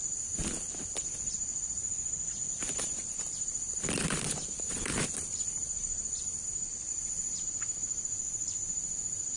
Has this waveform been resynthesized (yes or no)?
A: no